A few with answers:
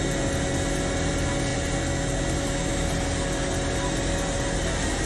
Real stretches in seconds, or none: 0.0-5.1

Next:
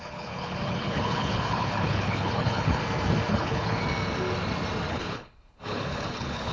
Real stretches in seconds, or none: 2.8-3.3; 3.8-4.9

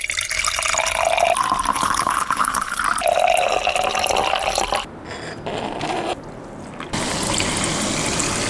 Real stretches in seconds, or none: 0.0-1.7; 2.8-8.5

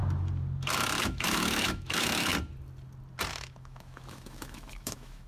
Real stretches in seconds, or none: 0.0-1.0; 2.3-3.3

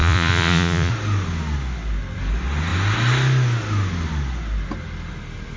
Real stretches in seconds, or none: 0.9-5.6

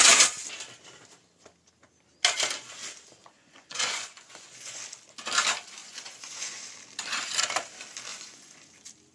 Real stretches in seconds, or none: 0.0-3.2; 4.8-5.8; 6.7-8.1; 8.7-9.1